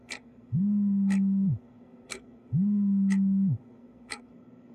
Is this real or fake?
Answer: fake